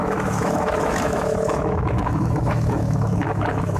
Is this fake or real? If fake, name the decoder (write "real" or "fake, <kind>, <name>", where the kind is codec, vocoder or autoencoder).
fake, autoencoder, DAC-VAE